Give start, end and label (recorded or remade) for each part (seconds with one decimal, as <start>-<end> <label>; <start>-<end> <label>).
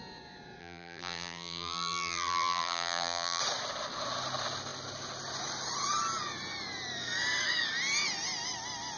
0.0-0.6 recorded; 0.6-3.4 remade; 3.4-9.0 recorded